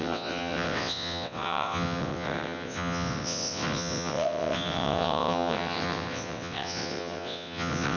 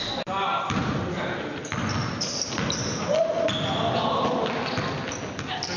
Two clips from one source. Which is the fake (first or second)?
first